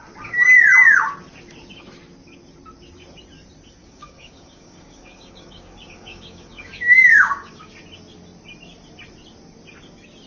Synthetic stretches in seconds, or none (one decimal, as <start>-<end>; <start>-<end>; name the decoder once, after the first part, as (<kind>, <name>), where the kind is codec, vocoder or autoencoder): 3.8-7.7 (codec, DAC)